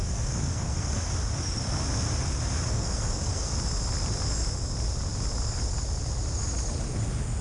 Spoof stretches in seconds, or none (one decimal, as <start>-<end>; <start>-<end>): 0.0-1.1; 2.7-3.5